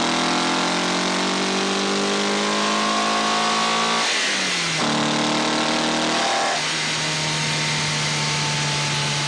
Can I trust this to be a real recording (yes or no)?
yes